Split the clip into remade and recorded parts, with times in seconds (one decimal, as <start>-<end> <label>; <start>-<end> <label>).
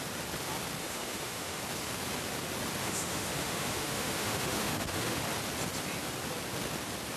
0.0-0.8 recorded; 0.8-1.6 remade; 1.6-2.8 recorded; 2.8-5.2 remade; 5.2-7.2 recorded